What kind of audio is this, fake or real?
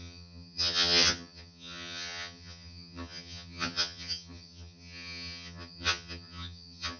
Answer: fake